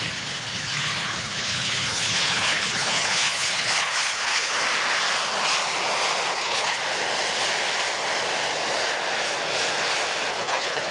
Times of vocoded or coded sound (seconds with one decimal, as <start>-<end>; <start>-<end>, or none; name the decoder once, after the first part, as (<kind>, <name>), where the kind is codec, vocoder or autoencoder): 0.0-4.6 (codec, HILCodec); 6.3-6.8; 10.3-10.9